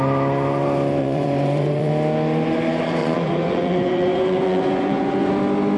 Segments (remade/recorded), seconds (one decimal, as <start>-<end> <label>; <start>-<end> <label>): 0.0-1.0 recorded; 1.0-1.9 remade; 1.9-3.0 recorded; 3.0-5.3 remade; 5.3-5.8 recorded